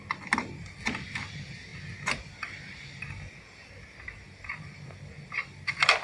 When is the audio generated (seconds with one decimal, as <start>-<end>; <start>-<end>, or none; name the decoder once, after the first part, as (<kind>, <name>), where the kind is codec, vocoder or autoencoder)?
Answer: none